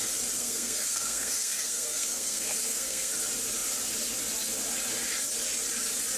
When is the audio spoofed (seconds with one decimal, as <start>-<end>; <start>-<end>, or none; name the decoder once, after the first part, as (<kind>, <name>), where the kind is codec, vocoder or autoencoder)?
0.4-3.1 (codec, SNAC)